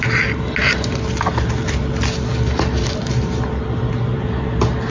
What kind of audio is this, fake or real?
real